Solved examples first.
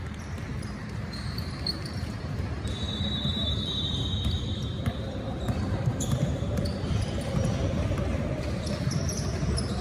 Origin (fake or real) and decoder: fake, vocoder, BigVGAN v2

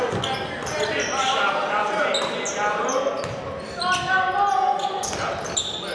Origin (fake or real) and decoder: real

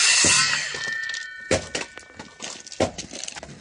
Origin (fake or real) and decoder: real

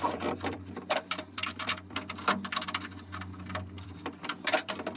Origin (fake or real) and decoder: fake, vocoder, BigVGAN v2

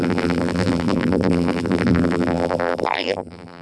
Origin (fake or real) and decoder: fake, vocoder, BigVGAN v2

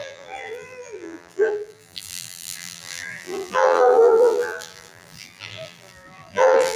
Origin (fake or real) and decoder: fake, vocoder, BigVGAN v2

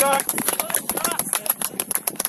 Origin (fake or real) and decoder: fake, vocoder, BigVGAN v2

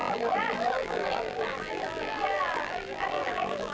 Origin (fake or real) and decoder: fake, vocoder, BigVGAN v2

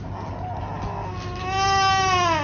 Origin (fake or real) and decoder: real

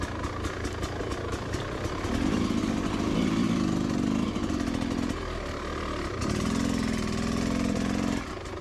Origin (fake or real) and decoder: real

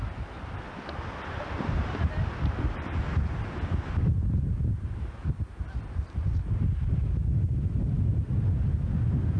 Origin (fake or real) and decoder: real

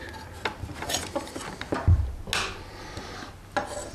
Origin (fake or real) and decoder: real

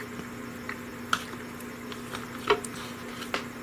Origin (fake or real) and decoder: real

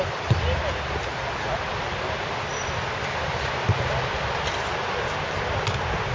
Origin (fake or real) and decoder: fake, vocoder, BigVGAN v2